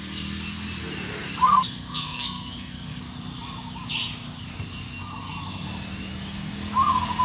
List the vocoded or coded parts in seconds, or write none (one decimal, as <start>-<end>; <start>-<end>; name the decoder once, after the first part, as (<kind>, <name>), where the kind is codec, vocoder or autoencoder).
1.4-3.0 (codec, SNAC)